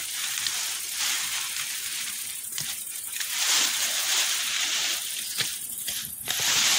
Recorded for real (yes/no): no